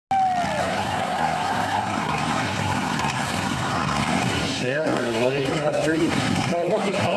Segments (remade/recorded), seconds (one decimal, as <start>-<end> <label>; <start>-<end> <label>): 0.0-0.6 recorded; 0.6-7.2 remade